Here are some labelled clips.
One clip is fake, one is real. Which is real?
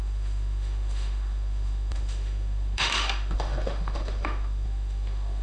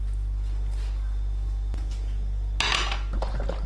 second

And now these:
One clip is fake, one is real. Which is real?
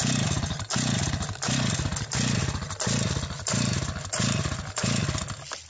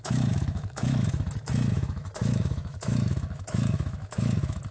first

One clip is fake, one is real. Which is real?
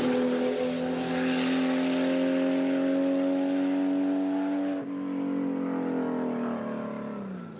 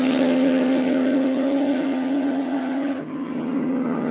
first